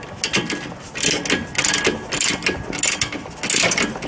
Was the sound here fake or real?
real